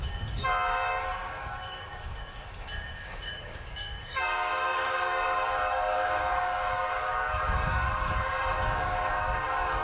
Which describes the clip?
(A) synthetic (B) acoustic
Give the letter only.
A